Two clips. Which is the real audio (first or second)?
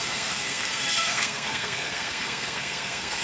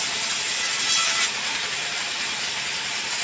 second